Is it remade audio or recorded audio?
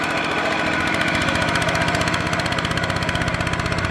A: recorded